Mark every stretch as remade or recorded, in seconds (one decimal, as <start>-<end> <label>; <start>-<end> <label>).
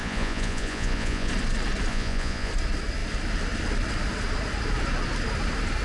0.0-1.3 remade; 1.3-1.9 recorded; 1.9-2.5 remade; 2.5-5.8 recorded